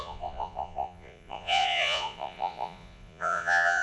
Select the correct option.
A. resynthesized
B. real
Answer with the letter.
A